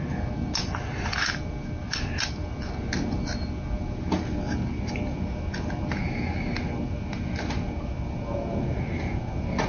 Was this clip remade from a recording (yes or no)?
no